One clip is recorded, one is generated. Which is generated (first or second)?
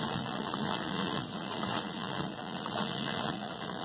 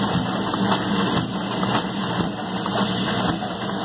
first